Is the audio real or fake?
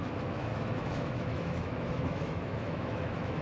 fake